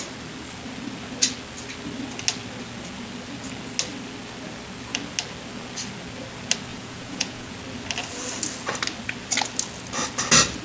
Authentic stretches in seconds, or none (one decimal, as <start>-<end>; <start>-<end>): 0.0-6.7; 7.5-10.6